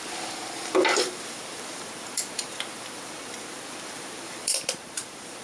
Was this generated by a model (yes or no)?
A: yes